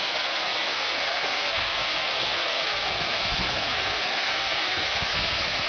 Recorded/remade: remade